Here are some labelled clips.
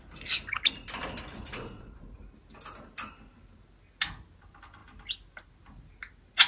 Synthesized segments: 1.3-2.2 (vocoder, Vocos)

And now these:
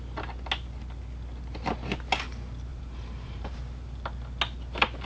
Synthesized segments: 2.7-3.6 (vocoder, BigVGAN v2)

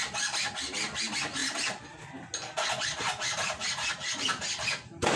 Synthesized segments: none

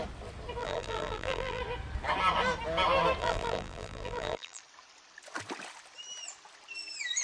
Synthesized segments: 0.6-1.6 (vocoder, BigVGAN v2); 3.2-4.6

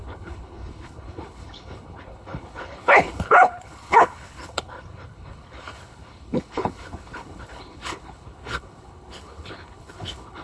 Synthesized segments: 0.0-10.4 (codec, HILCodec)

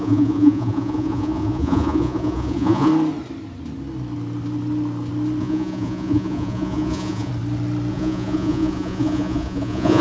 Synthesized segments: 0.0-2.9 (vocoder, Vocos); 5.4-7.3; 7.9-10.0